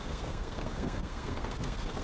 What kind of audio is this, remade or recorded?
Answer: remade